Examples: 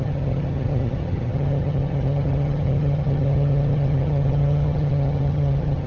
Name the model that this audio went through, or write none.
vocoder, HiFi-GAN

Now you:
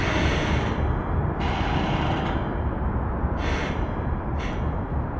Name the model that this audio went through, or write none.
none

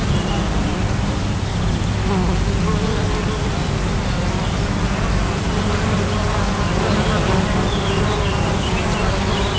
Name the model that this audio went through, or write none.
none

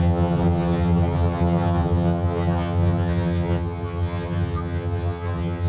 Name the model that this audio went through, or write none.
vocoder, HiFi-GAN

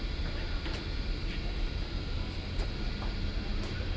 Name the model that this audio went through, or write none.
none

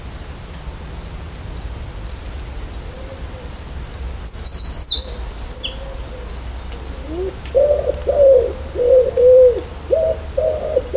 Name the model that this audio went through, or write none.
none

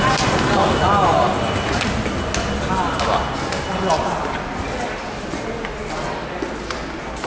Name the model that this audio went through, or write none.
none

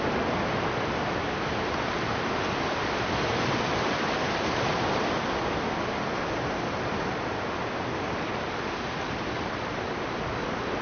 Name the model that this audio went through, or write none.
none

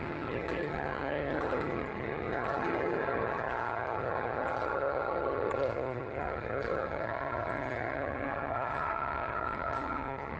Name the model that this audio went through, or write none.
vocoder, HiFi-GAN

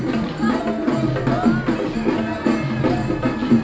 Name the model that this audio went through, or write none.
none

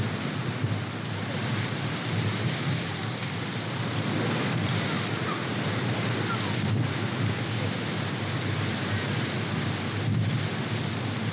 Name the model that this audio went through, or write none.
none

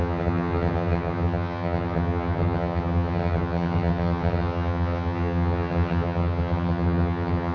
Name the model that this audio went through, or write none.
vocoder, HiFi-GAN